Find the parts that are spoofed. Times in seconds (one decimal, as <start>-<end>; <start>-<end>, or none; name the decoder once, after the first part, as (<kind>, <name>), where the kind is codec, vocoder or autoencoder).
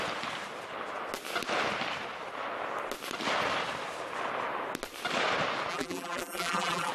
5.7-6.9 (vocoder, BigVGAN v2)